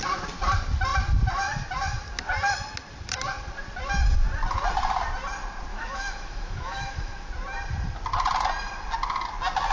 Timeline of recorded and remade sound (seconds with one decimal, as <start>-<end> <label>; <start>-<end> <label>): 0.0-5.7 recorded; 5.7-7.3 remade; 7.3-9.7 recorded